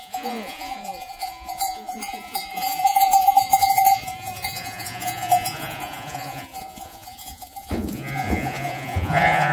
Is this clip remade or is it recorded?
remade